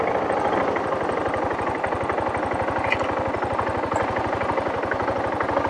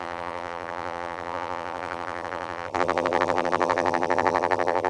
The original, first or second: first